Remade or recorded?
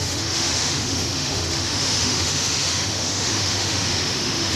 remade